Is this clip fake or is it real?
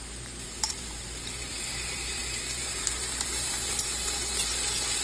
fake